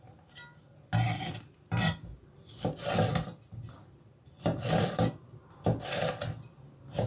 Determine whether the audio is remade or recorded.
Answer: recorded